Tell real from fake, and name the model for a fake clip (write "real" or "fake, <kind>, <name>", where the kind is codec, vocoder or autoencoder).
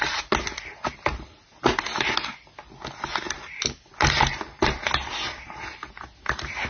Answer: real